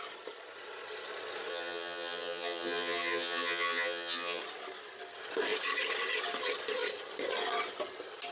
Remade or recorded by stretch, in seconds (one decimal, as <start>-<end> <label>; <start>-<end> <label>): 0.0-1.5 recorded; 1.5-4.4 remade; 4.4-8.3 recorded